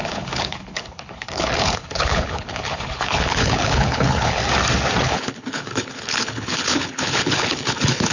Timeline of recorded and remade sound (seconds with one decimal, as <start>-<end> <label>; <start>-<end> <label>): 0.0-4.4 remade; 4.4-5.0 recorded; 5.0-8.1 remade